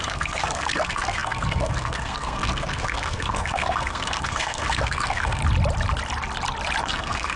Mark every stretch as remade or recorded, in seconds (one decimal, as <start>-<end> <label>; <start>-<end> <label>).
0.0-5.4 remade; 5.4-6.8 recorded; 6.8-7.4 remade